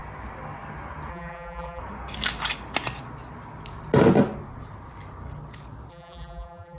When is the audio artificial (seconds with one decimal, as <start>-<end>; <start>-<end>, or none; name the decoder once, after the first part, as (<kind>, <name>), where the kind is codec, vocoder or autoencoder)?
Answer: 1.1-1.8 (vocoder, BigVGAN v2); 5.9-6.8